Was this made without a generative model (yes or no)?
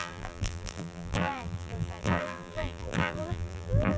no